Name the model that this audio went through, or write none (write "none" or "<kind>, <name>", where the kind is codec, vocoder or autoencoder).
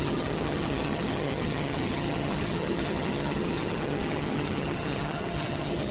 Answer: vocoder, HiFi-GAN